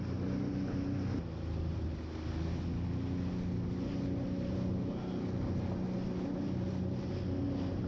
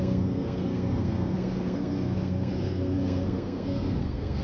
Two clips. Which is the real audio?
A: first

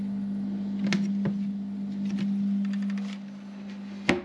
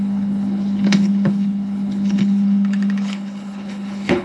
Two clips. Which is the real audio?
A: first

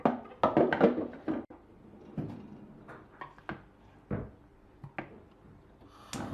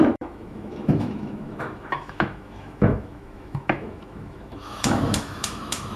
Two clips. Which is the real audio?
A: first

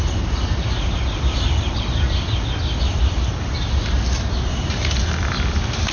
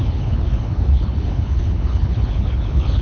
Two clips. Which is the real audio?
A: first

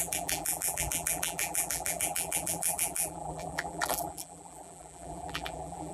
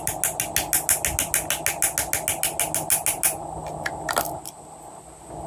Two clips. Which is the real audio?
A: second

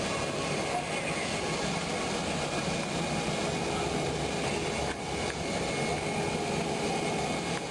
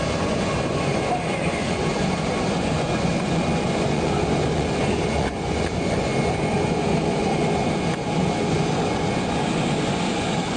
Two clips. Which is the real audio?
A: first